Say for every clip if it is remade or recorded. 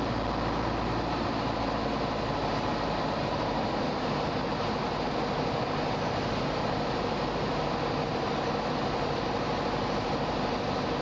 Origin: recorded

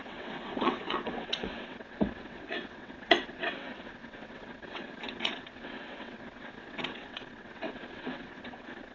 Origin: remade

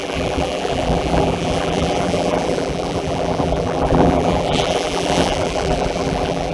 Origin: remade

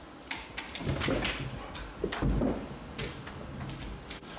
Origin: recorded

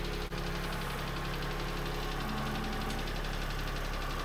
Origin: recorded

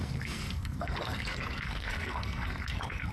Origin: remade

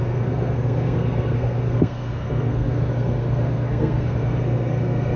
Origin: remade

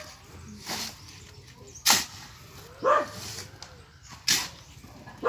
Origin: recorded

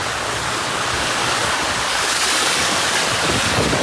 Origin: remade